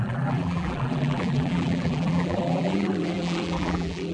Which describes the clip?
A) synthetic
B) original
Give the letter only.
A